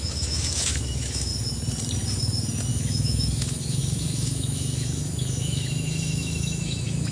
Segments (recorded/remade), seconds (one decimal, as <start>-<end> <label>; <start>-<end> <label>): 0.0-1.3 remade; 1.3-2.7 recorded; 2.7-7.1 remade